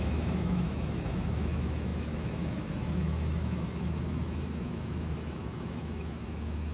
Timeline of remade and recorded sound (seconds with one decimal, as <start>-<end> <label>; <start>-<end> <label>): 0.0-6.7 remade

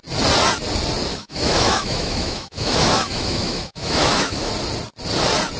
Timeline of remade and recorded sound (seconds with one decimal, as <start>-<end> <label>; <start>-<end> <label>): 0.0-1.1 recorded; 1.1-4.5 remade; 4.5-5.6 recorded

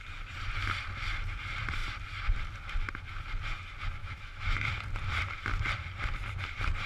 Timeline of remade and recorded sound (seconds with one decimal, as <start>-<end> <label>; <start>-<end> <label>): 0.0-4.0 recorded; 4.0-4.7 remade; 4.7-6.9 recorded

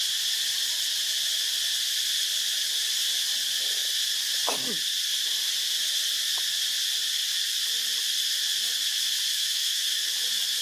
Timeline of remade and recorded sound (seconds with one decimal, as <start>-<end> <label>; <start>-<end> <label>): 0.0-9.3 recorded; 9.3-10.1 remade; 10.1-10.6 recorded